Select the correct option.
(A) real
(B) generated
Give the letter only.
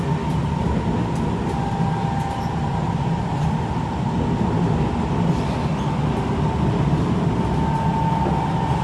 A